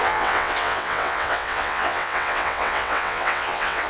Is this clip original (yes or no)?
no